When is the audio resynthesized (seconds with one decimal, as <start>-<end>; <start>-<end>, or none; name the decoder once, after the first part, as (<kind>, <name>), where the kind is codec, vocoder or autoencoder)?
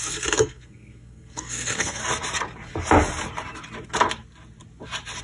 0.0-2.0 (codec, SNAC)